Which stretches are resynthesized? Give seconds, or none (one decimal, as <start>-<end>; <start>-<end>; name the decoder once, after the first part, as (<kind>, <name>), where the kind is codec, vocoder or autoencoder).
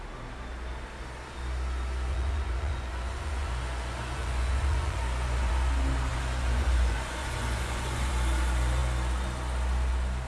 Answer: 2.1-5.5 (vocoder, Vocos); 6.1-8.1